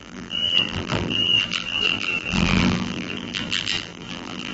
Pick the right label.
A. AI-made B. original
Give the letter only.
A